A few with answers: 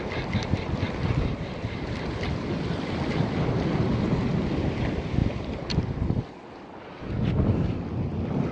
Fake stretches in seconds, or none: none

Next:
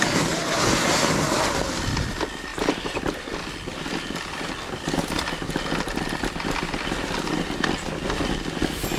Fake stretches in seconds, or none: 2.5-3.0 (vocoder, BigVGAN v2)